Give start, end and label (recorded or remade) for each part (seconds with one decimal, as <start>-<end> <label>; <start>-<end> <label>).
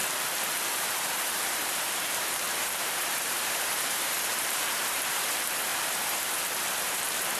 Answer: 0.0-0.8 recorded; 0.8-5.7 remade; 5.7-6.9 recorded; 6.9-7.4 remade